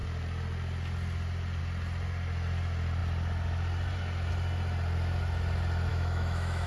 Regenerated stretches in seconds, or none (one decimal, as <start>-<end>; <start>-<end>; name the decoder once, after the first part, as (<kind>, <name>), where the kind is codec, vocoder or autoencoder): 5.9-6.7 (autoencoder, DAC-VAE)